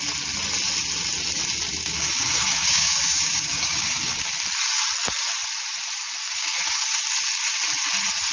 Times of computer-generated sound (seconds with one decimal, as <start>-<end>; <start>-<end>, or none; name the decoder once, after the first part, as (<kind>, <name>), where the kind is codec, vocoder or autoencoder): 1.8-4.3 (codec, DAC); 6.2-7.0